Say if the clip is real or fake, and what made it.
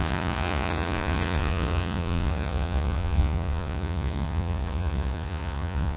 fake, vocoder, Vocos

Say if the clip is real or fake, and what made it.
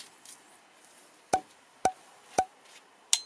real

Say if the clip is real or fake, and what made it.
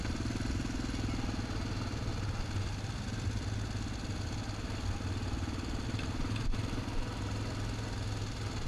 real